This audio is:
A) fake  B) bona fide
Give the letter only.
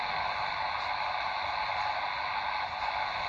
B